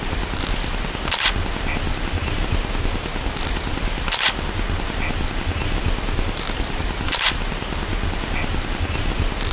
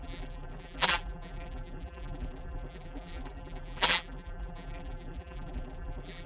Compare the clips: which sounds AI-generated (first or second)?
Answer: second